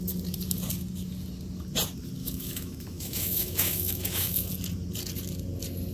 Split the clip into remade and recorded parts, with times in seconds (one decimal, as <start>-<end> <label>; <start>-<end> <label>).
0.0-2.2 recorded; 2.2-4.5 remade; 4.5-5.9 recorded